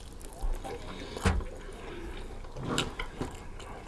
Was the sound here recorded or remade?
recorded